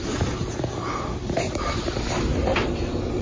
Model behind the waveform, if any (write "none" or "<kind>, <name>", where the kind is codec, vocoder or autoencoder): none